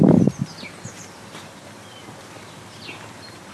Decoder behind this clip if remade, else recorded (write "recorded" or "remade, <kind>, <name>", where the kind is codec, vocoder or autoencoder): remade, vocoder, BigVGAN v2